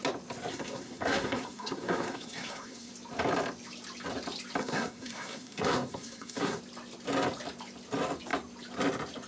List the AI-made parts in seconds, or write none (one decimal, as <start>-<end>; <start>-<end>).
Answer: 0.5-2.9; 4.6-6.6